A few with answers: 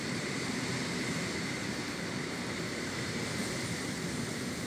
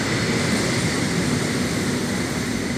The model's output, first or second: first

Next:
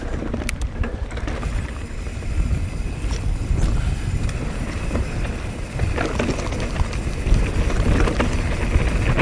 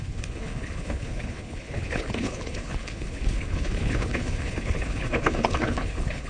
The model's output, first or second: second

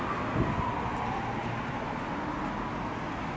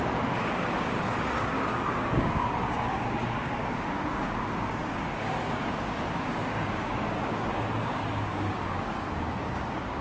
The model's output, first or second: second